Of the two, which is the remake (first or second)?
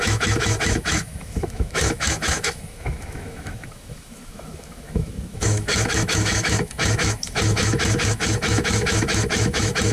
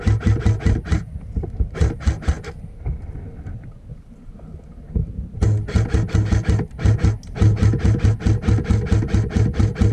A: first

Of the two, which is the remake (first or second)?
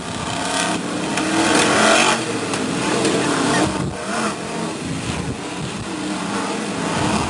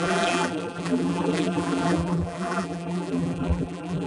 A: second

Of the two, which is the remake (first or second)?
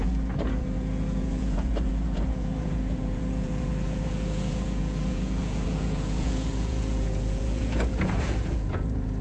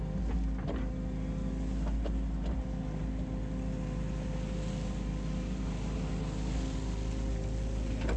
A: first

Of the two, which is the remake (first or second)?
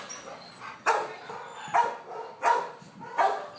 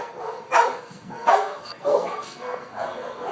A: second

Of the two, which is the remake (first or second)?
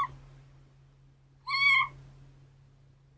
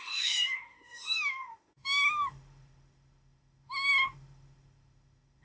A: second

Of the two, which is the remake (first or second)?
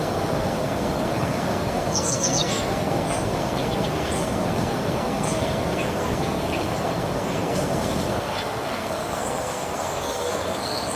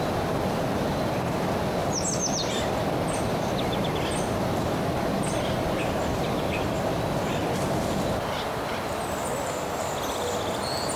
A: first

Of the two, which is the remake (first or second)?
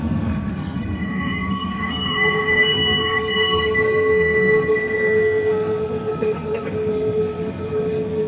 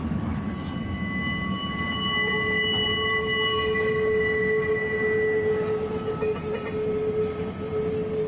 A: first